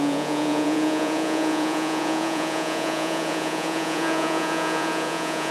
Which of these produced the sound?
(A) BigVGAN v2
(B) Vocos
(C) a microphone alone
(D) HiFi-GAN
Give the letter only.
B